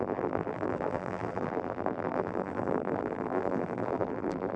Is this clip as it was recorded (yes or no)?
no